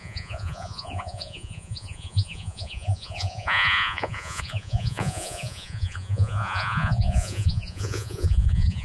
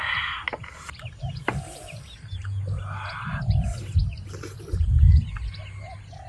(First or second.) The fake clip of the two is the first